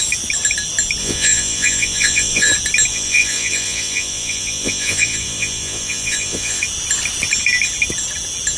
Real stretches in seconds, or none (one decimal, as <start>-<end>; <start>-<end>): 0.0-1.0; 2.5-2.9; 6.6-8.6